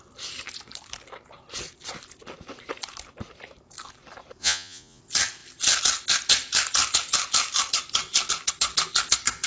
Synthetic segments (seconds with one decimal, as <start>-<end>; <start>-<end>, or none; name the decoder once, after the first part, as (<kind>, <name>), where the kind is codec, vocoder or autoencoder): 4.4-5.0 (vocoder, Vocos)